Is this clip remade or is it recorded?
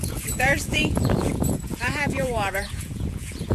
remade